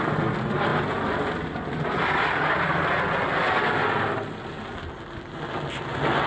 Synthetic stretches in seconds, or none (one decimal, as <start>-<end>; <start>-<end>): none